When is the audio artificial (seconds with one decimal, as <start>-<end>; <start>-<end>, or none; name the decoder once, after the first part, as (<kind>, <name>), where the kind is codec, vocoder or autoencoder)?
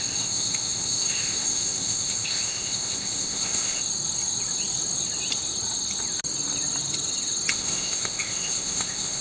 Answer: 0.0-3.8 (codec, ZipCodec); 7.5-9.2